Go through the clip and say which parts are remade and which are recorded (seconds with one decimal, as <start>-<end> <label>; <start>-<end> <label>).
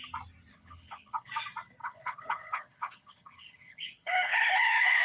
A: 0.0-0.5 recorded; 0.5-1.3 remade; 1.3-1.8 recorded; 1.8-5.0 remade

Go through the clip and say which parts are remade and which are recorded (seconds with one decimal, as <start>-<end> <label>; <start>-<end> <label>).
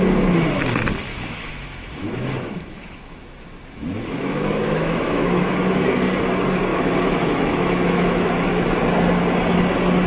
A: 0.0-1.1 recorded; 1.1-5.9 remade; 5.9-6.7 recorded; 6.7-8.5 remade; 8.5-10.1 recorded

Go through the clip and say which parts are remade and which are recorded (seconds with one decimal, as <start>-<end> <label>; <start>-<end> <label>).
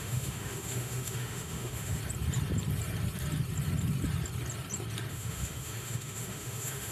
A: 0.0-2.0 remade; 2.0-5.1 recorded; 5.1-6.9 remade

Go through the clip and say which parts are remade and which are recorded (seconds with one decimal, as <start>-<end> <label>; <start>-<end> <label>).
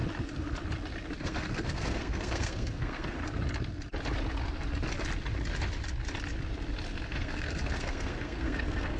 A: 0.0-1.2 recorded; 1.2-3.2 remade; 3.2-7.1 recorded; 7.1-9.0 remade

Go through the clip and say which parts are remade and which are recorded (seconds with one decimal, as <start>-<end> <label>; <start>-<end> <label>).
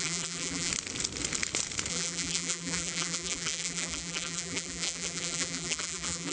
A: 0.0-0.7 remade; 0.7-1.9 recorded; 1.9-6.3 remade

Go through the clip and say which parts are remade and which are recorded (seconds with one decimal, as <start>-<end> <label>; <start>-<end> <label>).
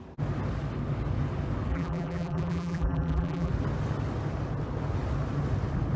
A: 0.0-1.7 recorded; 1.7-3.5 remade; 3.5-6.0 recorded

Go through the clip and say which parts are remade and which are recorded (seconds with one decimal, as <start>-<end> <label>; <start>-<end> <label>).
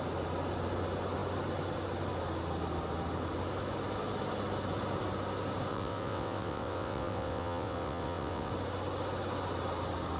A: 0.0-5.7 recorded; 5.7-8.5 remade; 8.5-10.2 recorded